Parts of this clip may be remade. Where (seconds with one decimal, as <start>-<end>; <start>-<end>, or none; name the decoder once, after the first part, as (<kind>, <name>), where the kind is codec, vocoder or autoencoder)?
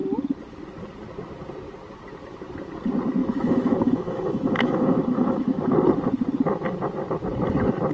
3.2-5.7 (autoencoder, DAC-VAE)